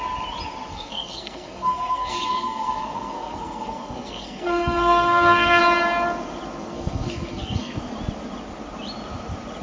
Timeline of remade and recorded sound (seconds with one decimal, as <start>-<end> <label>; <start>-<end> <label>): 0.0-0.7 recorded; 0.7-5.6 remade; 5.6-6.6 recorded; 6.6-7.8 remade; 7.8-9.6 recorded